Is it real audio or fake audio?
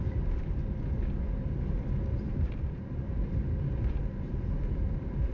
real